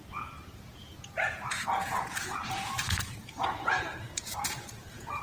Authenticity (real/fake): fake